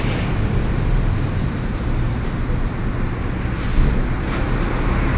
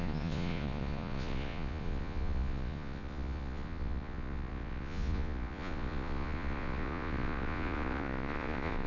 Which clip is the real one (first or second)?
first